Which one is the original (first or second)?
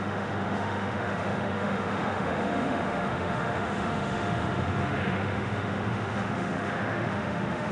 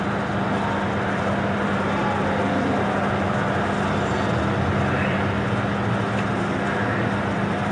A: second